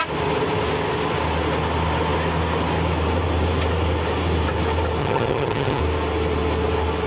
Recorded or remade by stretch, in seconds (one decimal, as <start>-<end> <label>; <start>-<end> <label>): 0.0-5.0 recorded; 5.0-5.8 remade; 5.8-7.1 recorded